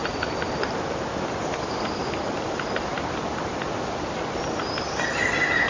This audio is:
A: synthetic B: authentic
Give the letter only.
B